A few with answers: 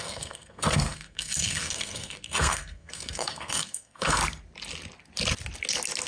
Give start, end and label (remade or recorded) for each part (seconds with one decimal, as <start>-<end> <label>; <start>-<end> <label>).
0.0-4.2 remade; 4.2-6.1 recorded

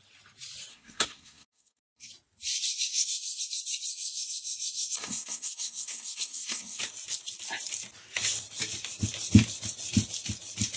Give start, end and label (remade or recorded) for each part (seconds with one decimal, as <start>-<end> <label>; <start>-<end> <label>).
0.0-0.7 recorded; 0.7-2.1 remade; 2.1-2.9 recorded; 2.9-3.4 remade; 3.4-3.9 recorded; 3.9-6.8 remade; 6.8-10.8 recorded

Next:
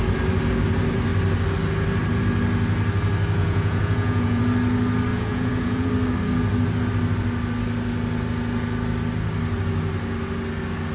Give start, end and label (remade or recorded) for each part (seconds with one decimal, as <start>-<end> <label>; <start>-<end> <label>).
0.0-3.4 recorded; 3.4-4.4 remade; 4.4-5.1 recorded; 5.1-5.9 remade; 5.9-10.9 recorded

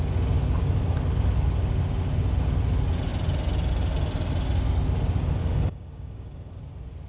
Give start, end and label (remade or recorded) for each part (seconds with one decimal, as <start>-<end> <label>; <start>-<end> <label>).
0.0-5.4 recorded; 5.4-6.5 remade; 6.5-7.1 recorded

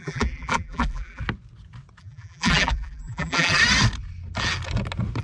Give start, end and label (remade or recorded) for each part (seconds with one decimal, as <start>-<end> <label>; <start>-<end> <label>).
0.0-1.2 remade; 1.2-2.0 recorded; 2.0-3.6 remade; 3.6-5.2 recorded